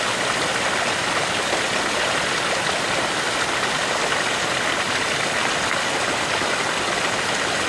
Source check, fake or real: real